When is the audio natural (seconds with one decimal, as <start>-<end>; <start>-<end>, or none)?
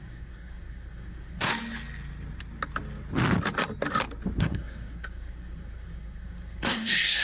1.5-4.4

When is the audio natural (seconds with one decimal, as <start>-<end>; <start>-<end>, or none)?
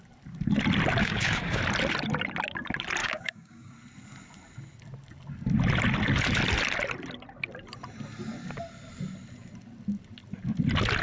0.0-1.0; 1.6-3.0; 3.7-11.0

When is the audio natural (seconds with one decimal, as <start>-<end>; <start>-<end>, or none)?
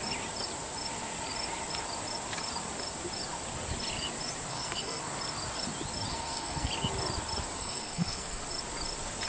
0.0-4.5; 5.0-6.1; 6.7-7.6; 8.4-9.3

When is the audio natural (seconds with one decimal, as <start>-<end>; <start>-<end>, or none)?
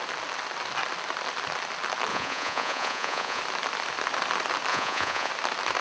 0.0-2.1; 3.4-4.7; 5.3-5.8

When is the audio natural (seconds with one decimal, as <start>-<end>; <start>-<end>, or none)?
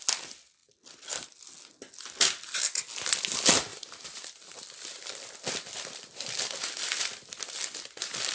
0.0-3.7; 7.1-8.3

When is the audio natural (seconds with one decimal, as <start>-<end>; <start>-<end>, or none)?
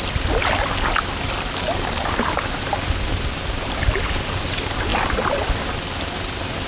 0.0-6.7